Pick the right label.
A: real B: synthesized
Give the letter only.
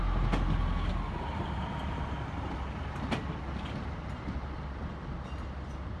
A